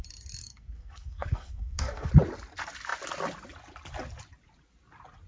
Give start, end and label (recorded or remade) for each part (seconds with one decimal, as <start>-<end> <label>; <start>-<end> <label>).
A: 0.0-0.4 recorded; 0.4-2.1 remade; 2.1-5.3 recorded